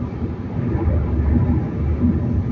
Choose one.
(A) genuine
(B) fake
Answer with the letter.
A